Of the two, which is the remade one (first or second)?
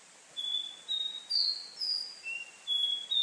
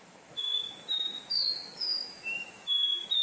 second